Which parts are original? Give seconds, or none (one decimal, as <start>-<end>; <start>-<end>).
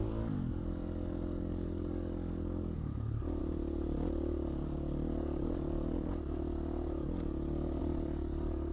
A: 3.4-7.8